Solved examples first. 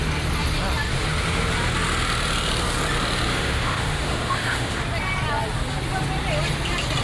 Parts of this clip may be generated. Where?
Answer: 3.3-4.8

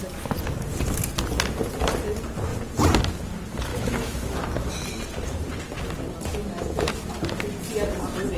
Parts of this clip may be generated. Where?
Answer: 3.7-4.9; 6.3-6.9

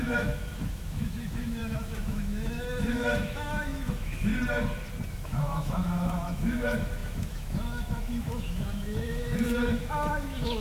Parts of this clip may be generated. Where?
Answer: 0.0-4.3; 5.1-10.6